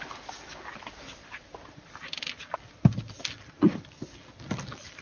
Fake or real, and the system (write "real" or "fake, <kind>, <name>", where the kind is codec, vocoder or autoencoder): real